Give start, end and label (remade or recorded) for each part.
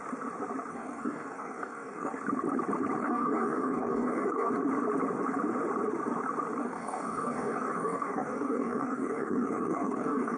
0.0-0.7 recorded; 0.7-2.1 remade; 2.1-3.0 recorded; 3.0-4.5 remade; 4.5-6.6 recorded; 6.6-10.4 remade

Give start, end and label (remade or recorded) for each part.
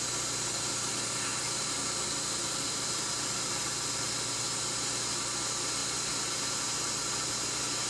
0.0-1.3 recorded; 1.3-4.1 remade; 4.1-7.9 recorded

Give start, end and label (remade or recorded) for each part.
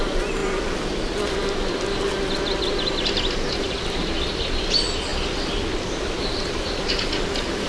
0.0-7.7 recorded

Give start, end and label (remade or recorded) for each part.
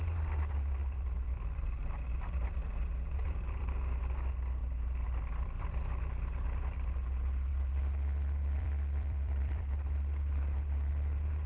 0.0-0.8 recorded; 0.8-3.6 remade; 3.6-4.6 recorded; 4.6-5.2 remade; 5.2-7.5 recorded; 7.5-10.9 remade; 10.9-11.5 recorded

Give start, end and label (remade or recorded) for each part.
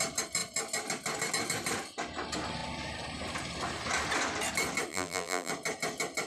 0.0-4.9 recorded; 4.9-5.5 remade; 5.5-6.3 recorded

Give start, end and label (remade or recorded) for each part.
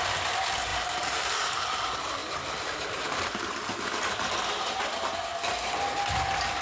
0.0-0.7 recorded; 0.7-1.3 remade; 1.3-2.2 recorded; 2.2-3.5 remade; 3.5-6.6 recorded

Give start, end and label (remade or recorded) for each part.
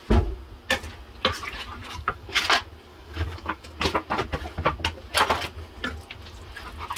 0.0-1.8 recorded; 1.8-2.4 remade; 2.4-2.9 recorded; 2.9-3.7 remade; 3.7-7.0 recorded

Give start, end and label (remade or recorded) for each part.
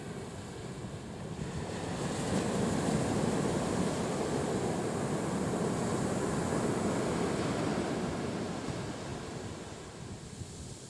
0.0-10.9 recorded